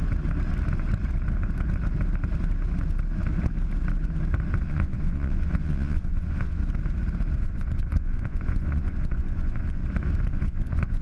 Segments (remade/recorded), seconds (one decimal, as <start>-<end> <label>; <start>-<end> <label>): 0.0-4.6 recorded; 4.6-6.6 remade; 6.6-7.4 recorded; 7.4-9.8 remade; 9.8-10.3 recorded; 10.3-11.0 remade